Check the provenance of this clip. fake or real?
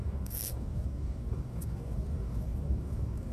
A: fake